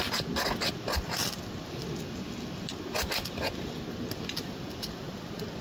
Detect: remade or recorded recorded